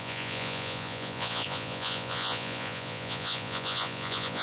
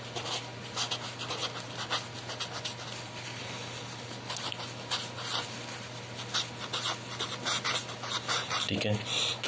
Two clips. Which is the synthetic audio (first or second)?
first